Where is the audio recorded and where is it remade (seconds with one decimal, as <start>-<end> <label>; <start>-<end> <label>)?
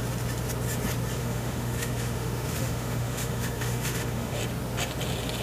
0.0-1.2 recorded; 1.2-4.4 remade; 4.4-5.4 recorded